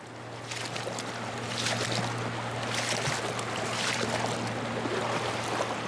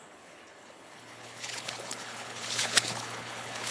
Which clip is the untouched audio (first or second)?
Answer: first